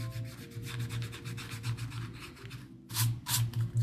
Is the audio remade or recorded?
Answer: recorded